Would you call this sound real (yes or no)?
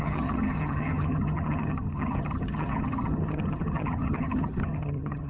no